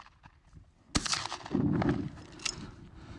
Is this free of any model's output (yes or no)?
yes